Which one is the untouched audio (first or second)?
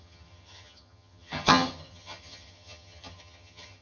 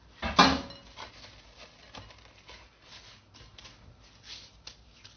second